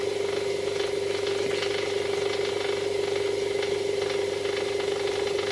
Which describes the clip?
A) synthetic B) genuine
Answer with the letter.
B